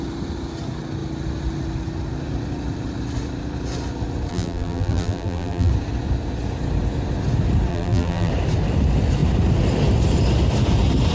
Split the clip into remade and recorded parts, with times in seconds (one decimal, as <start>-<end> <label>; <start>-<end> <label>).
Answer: 0.0-4.3 recorded; 4.3-5.7 remade; 5.7-7.7 recorded; 7.7-8.3 remade; 8.3-11.1 recorded